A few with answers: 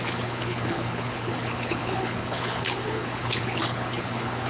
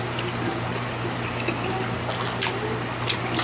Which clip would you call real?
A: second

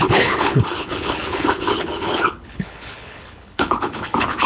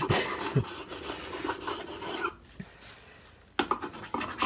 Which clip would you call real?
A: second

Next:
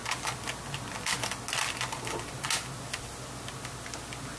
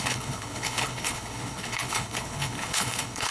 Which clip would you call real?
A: first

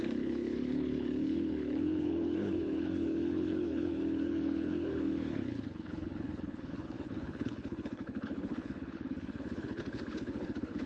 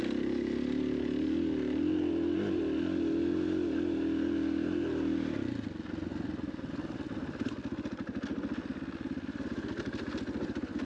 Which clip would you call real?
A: second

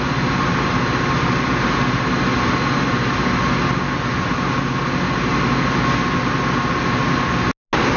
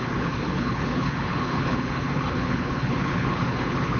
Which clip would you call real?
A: first